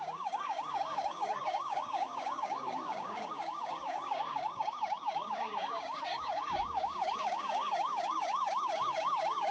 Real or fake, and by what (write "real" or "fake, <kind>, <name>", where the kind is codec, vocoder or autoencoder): fake, codec, DAC